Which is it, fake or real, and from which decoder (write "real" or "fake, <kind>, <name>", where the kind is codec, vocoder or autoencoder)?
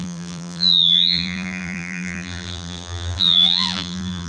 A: fake, vocoder, BigVGAN v2